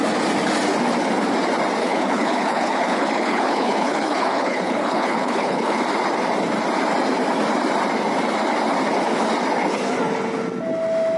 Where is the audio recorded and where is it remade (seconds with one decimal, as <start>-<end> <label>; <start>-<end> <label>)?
0.0-1.8 recorded; 1.8-5.8 remade; 5.8-11.2 recorded